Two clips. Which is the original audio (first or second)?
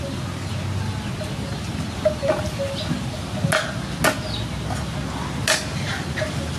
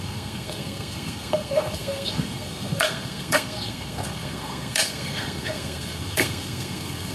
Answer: first